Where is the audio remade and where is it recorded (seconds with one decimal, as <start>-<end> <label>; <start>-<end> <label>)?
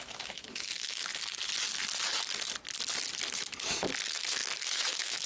0.0-1.1 remade; 1.1-4.0 recorded; 4.0-5.3 remade